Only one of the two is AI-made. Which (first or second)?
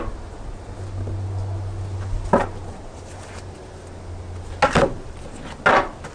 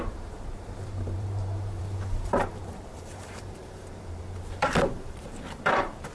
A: second